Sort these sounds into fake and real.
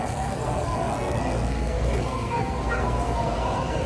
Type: fake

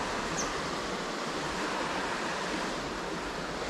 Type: real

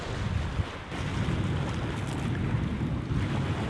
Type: real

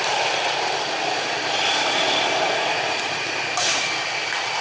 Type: real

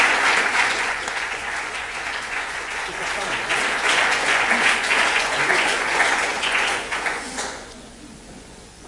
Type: fake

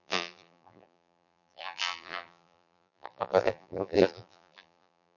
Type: fake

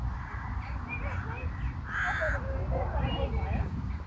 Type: real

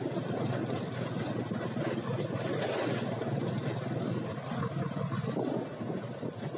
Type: real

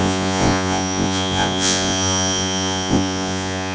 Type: fake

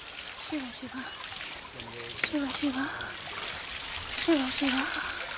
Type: real